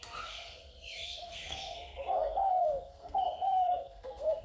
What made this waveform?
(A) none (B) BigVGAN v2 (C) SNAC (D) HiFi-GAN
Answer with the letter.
C